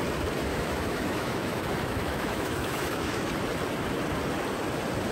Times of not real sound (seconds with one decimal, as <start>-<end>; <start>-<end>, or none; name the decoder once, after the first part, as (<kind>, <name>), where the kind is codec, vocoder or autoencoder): 0.5-3.3 (autoencoder, DAC-VAE)

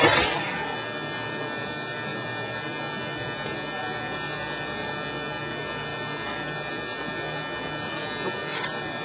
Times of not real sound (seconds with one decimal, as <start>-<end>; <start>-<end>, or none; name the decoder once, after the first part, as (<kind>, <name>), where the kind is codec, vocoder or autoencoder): none

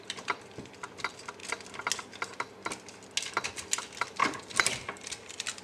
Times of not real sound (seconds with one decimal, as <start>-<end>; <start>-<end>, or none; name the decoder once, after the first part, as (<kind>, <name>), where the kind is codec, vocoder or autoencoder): 0.0-1.4 (vocoder, BigVGAN v2); 4.2-5.6